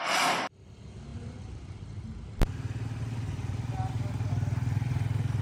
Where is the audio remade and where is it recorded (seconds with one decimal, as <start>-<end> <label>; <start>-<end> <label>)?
0.0-5.4 recorded